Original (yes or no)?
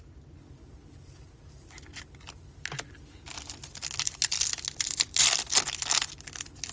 yes